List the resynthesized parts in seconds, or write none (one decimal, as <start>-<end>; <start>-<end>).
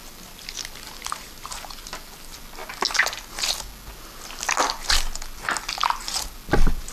none